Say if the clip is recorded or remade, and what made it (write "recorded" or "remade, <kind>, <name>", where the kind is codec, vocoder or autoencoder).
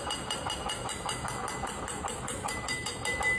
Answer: recorded